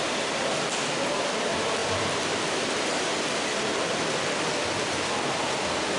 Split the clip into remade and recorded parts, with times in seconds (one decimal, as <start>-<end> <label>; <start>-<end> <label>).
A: 0.0-6.0 recorded